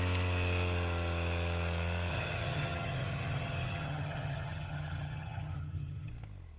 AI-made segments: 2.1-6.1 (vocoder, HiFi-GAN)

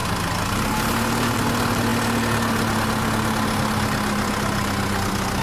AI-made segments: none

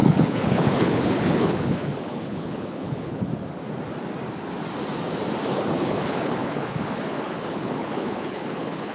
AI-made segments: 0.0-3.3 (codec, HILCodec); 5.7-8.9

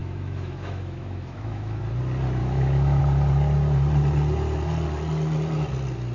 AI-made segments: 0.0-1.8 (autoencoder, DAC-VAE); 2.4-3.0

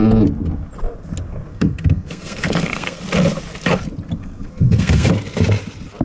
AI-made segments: 1.5-3.0 (codec, SNAC); 4.2-5.1

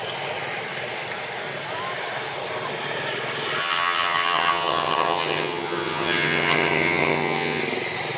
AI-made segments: 3.6-7.6 (vocoder, HiFi-GAN)

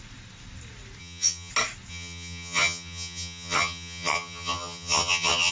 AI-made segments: 1.0-1.5 (vocoder, HiFi-GAN); 1.9-5.5